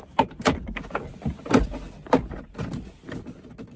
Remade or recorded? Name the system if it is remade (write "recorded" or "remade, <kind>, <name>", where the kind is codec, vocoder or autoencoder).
recorded